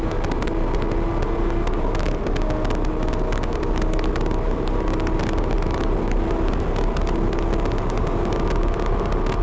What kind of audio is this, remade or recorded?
recorded